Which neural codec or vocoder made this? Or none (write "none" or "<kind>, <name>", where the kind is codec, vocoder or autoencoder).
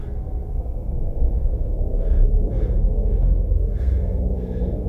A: codec, SNAC